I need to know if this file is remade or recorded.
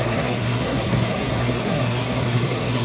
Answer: remade